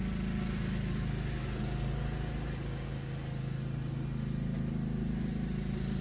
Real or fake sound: real